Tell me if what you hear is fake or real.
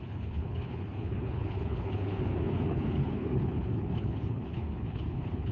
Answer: fake